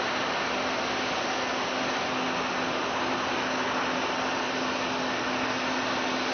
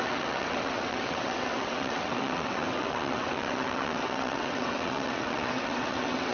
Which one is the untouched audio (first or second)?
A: first